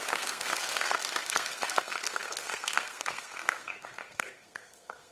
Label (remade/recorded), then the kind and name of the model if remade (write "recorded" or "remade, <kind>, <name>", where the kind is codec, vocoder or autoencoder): remade, codec, SNAC